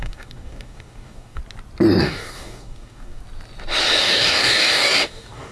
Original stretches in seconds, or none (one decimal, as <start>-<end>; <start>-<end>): 1.4-2.0; 3.2-4.0